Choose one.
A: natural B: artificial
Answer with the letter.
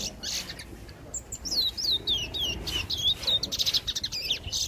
A